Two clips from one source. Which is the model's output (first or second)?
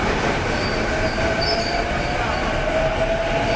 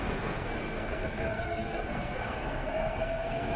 second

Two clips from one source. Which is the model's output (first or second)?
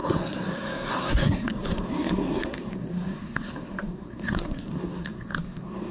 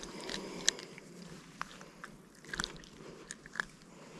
first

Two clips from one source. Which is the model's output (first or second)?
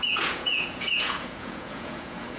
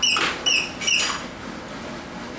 first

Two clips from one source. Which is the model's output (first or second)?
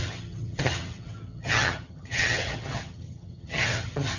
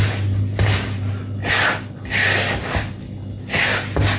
first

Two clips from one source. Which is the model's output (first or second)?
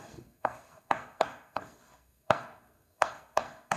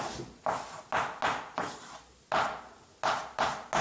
first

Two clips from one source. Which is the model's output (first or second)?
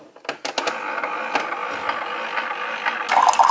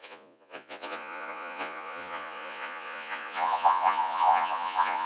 second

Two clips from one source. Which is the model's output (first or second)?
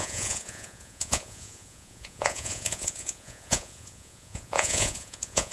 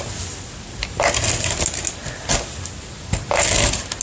first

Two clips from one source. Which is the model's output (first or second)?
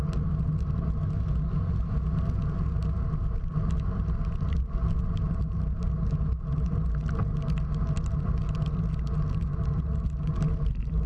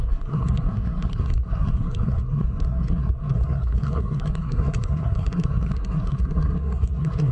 second